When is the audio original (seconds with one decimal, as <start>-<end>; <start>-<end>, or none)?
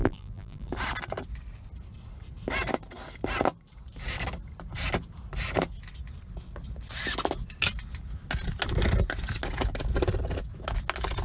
0.7-11.2